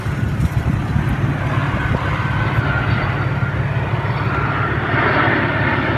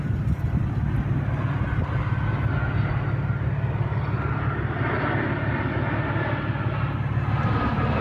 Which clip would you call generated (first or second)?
first